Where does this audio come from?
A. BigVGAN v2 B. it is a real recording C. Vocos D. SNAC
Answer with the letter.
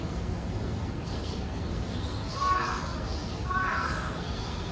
D